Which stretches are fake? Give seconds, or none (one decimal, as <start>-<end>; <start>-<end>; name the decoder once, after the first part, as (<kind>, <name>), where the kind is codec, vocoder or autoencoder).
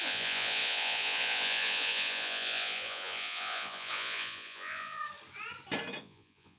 0.0-5.0 (vocoder, Vocos); 6.0-6.6